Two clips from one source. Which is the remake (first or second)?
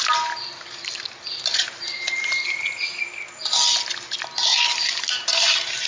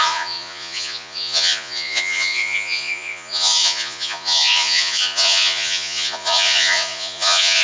second